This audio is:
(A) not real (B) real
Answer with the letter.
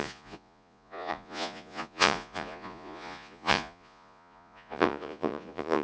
A